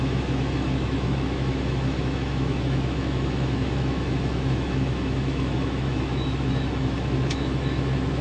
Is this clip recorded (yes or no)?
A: no